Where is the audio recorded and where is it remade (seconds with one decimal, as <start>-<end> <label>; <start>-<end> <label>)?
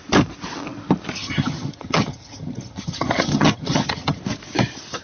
0.0-1.2 recorded; 1.2-4.2 remade; 4.2-5.0 recorded